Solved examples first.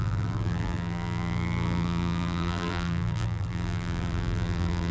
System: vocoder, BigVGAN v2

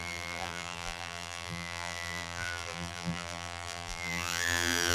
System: vocoder, BigVGAN v2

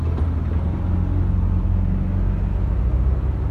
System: none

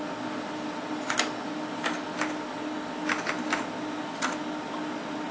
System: none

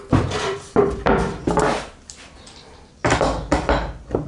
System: vocoder, BigVGAN v2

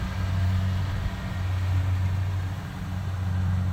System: none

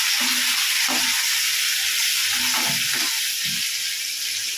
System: none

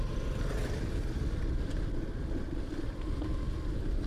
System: none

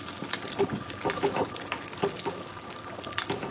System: none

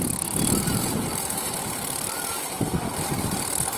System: vocoder, BigVGAN v2